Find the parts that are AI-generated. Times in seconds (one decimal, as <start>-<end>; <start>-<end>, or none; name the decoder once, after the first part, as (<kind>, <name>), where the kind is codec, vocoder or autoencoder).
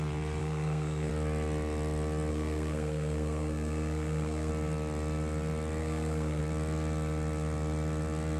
0.4-1.1 (codec, SNAC); 2.3-4.5; 5.8-6.4